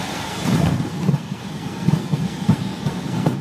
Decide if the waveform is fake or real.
fake